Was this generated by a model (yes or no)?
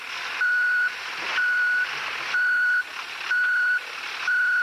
no